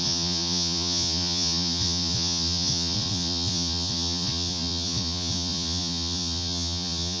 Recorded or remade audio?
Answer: remade